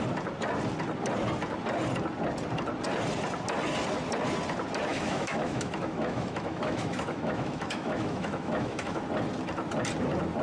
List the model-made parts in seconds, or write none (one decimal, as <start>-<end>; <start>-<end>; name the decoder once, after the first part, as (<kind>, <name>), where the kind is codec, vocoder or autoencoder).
4.9-9.0 (autoencoder, DAC-VAE)